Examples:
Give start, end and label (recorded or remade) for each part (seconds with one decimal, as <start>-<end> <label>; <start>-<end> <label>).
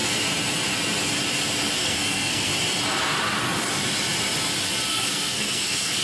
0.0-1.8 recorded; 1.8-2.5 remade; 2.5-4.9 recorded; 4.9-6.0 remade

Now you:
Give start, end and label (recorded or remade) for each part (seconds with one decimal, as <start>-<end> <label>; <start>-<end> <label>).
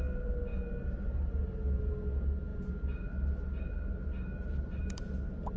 0.0-4.4 recorded; 4.4-5.0 remade; 5.0-5.6 recorded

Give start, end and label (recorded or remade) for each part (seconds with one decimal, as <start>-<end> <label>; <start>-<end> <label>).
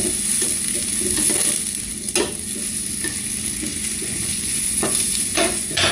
0.0-3.7 recorded; 3.7-5.9 remade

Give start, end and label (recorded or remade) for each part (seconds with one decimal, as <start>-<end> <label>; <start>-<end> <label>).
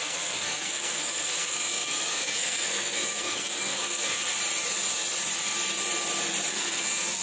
0.0-4.4 remade; 4.4-6.5 recorded; 6.5-7.2 remade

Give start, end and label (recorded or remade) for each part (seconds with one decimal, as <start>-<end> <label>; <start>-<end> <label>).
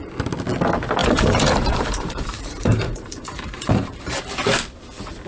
0.0-1.0 recorded; 1.0-4.2 remade; 4.2-5.3 recorded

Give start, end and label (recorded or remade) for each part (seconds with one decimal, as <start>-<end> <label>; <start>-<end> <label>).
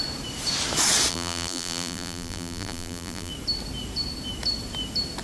0.0-1.1 recorded; 1.1-3.3 remade; 3.3-5.2 recorded